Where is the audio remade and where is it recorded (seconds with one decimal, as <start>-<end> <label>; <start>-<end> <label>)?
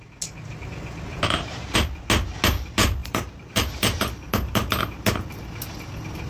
0.0-1.1 recorded; 1.1-1.7 remade; 1.7-3.0 recorded; 3.0-4.8 remade; 4.8-6.3 recorded